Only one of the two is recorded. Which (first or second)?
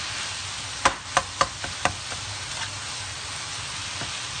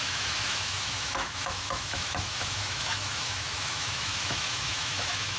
first